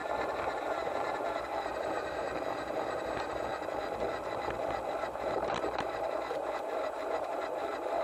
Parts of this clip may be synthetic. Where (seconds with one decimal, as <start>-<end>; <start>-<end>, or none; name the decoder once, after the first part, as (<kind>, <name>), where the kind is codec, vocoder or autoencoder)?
0.0-3.5 (vocoder, BigVGAN v2); 5.0-8.0